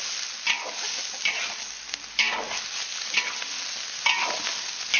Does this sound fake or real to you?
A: real